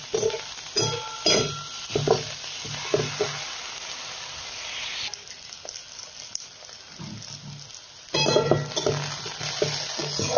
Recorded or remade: recorded